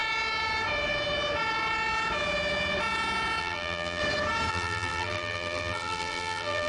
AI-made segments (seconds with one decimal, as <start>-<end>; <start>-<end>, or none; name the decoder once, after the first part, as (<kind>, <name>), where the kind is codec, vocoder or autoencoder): 3.4-4.0 (vocoder, BigVGAN v2); 4.5-6.7